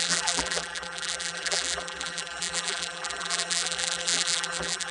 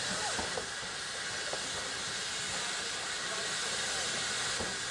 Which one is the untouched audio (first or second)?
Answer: second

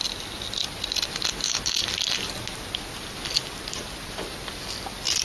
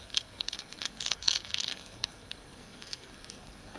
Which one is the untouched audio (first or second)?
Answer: first